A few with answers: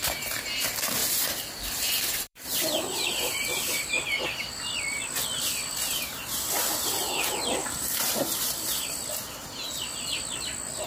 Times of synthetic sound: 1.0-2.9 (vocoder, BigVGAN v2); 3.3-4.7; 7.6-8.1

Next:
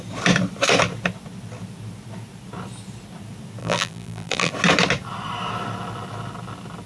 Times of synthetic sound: 3.6-4.5 (vocoder, BigVGAN v2)